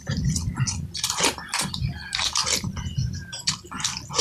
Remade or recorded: remade